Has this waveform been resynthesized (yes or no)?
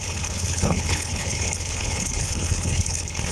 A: yes